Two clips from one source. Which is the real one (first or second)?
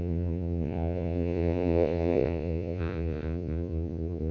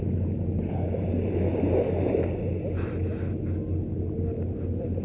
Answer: second